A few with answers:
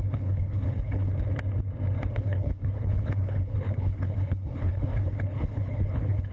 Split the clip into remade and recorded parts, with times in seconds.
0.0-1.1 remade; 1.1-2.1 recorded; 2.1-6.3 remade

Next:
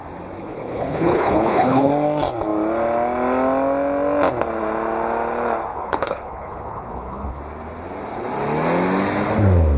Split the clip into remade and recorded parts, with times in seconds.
0.0-0.4 recorded; 0.4-1.9 remade; 1.9-5.7 recorded; 5.7-7.4 remade; 7.4-9.8 recorded

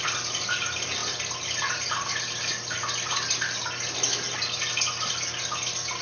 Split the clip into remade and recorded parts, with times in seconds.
0.0-6.0 recorded

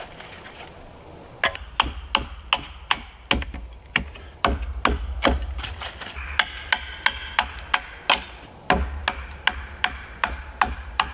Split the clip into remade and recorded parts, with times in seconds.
0.0-11.1 recorded